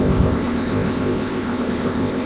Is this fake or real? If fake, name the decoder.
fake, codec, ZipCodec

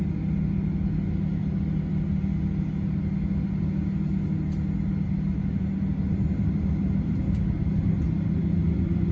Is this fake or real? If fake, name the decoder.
real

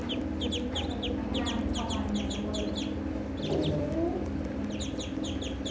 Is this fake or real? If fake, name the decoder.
real